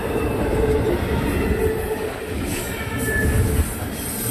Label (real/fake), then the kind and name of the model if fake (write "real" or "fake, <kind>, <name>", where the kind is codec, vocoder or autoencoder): real